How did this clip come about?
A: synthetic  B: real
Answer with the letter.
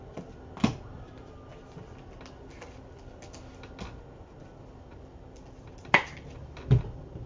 B